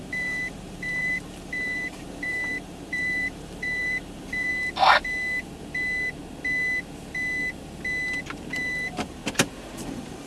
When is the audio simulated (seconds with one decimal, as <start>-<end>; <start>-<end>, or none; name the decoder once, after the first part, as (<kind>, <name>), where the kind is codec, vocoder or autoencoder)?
0.0-4.5 (vocoder, BigVGAN v2); 8.5-9.2; 9.9-10.3